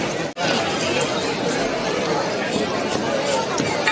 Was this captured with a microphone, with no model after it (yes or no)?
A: yes